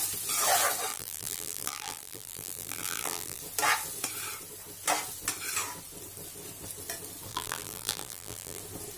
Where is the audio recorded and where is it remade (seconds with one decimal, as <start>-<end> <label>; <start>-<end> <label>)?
0.0-0.9 recorded; 0.9-3.4 remade; 3.4-7.3 recorded; 7.3-8.6 remade; 8.6-9.0 recorded

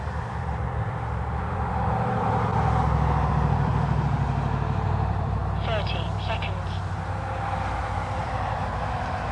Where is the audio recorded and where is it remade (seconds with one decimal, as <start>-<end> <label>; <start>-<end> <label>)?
0.0-2.5 remade; 2.5-3.3 recorded; 3.3-3.7 remade; 3.7-4.9 recorded; 4.9-5.4 remade; 5.4-8.2 recorded; 8.2-9.3 remade

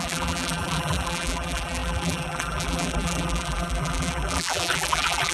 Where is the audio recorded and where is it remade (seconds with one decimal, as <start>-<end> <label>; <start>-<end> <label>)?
0.0-5.3 remade

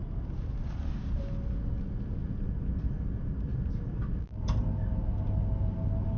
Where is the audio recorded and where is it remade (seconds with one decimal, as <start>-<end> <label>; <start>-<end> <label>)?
0.0-6.2 recorded

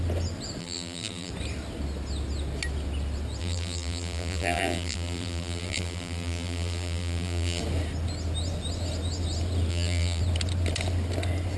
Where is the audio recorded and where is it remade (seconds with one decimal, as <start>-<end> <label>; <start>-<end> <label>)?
0.0-0.6 recorded; 0.6-1.3 remade; 1.3-3.4 recorded; 3.4-7.6 remade; 7.6-9.7 recorded; 9.7-10.2 remade; 10.2-11.6 recorded